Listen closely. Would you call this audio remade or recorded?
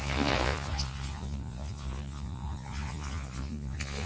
remade